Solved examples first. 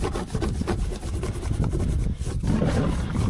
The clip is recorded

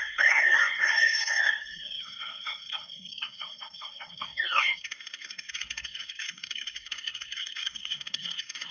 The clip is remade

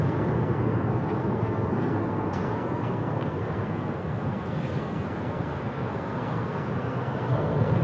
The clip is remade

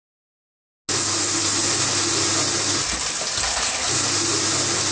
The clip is recorded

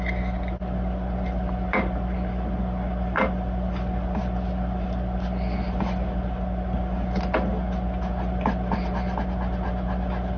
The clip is recorded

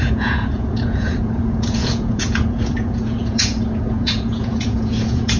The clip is remade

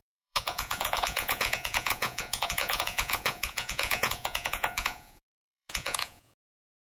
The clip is remade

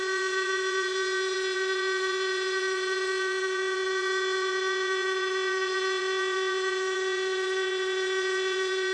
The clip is remade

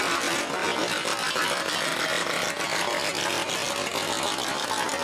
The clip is recorded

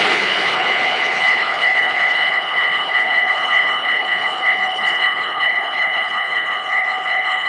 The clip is remade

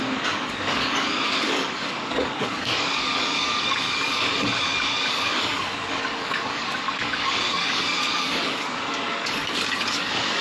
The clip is remade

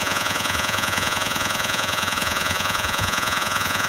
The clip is remade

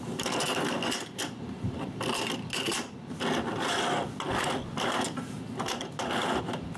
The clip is recorded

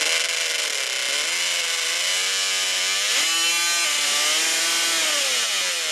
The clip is recorded